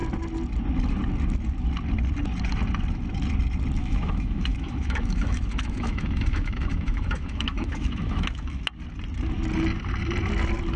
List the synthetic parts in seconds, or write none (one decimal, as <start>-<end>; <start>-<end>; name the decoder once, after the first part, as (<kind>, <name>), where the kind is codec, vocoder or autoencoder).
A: 3.8-8.6 (autoencoder, DAC-VAE)